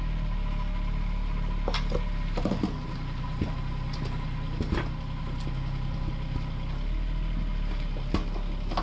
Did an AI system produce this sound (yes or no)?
no